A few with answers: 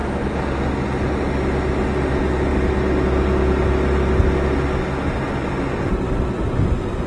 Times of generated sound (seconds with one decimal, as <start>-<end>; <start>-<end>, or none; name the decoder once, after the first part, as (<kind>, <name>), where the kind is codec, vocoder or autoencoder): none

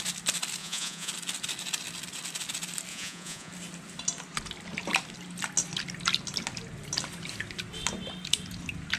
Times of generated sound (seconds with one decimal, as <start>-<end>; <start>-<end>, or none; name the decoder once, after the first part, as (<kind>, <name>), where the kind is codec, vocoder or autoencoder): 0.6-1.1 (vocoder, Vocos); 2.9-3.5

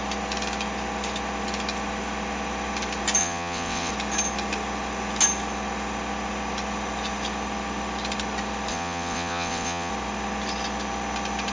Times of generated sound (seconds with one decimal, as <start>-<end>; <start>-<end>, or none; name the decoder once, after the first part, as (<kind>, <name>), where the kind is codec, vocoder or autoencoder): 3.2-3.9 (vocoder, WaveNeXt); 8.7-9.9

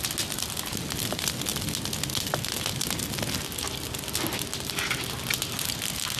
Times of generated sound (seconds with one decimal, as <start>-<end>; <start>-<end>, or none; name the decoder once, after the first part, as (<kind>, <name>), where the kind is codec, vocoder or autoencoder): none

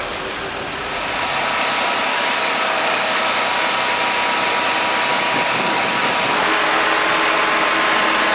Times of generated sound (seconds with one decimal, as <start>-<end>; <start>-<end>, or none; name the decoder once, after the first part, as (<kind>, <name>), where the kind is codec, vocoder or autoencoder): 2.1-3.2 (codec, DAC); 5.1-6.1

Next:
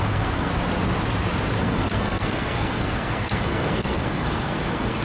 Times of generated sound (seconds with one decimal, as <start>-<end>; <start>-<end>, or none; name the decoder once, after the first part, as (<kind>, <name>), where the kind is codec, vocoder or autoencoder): 0.0-0.5 (codec, SNAC); 1.6-5.0